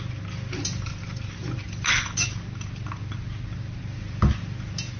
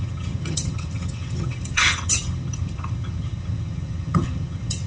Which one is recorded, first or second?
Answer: first